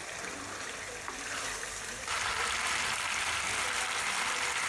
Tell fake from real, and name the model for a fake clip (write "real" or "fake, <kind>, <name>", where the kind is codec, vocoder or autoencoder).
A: fake, vocoder, BigVGAN v2